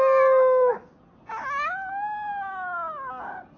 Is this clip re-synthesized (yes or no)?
no